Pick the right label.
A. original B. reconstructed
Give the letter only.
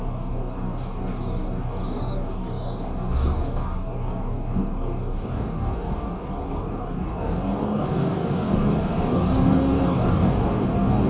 B